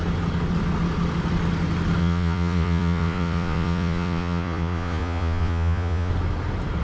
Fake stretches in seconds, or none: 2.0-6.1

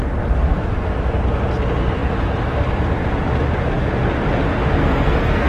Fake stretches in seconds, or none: 4.8-5.5